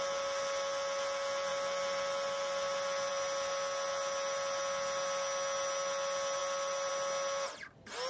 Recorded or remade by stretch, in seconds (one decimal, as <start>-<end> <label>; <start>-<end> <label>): 0.0-8.1 recorded

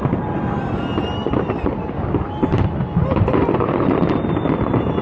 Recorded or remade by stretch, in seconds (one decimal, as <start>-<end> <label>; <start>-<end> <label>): 0.0-5.0 recorded

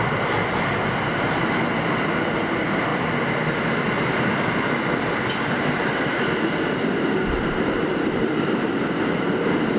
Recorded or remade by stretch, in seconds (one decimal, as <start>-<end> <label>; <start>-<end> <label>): 0.0-9.8 recorded

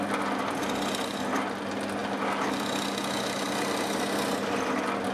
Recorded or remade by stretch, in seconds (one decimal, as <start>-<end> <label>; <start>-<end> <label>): 0.0-5.1 recorded

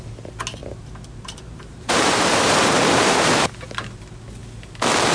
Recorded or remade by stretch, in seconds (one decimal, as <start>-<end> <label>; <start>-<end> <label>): 0.0-0.6 recorded; 0.6-3.7 remade; 3.7-5.1 recorded

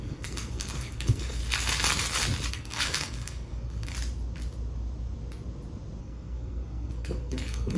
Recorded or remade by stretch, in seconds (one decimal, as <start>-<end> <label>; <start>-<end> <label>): 0.0-1.4 remade; 1.4-2.5 recorded; 2.5-3.9 remade; 3.9-6.0 recorded; 6.0-7.8 remade

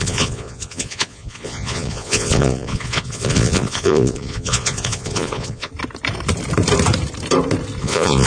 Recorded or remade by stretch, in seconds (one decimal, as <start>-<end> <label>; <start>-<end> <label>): 0.0-5.7 remade; 5.7-7.8 recorded; 7.8-8.3 remade

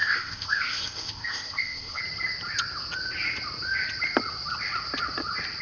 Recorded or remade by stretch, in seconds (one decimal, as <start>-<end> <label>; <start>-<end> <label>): 0.0-2.0 remade; 2.0-5.6 recorded